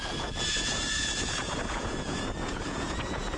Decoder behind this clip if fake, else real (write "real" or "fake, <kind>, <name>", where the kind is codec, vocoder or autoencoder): fake, vocoder, Vocos